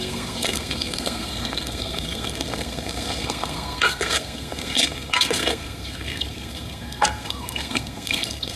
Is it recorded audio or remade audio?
remade